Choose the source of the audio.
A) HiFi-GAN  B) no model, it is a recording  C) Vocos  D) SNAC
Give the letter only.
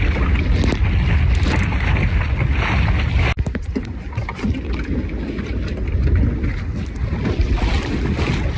B